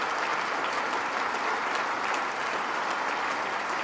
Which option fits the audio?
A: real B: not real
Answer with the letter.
A